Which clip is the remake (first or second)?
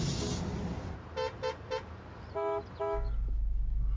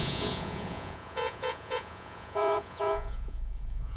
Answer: second